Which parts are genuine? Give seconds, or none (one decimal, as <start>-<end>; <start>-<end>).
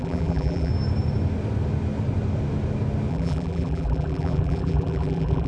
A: 0.7-3.1